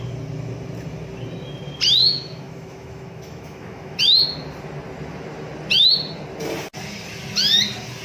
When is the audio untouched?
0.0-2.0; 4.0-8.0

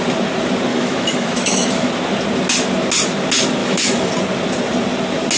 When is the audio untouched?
0.0-0.7; 1.9-3.6; 4.1-5.4